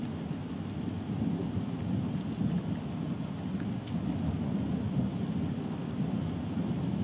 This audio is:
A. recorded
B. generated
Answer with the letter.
A